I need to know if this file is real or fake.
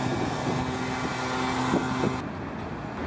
real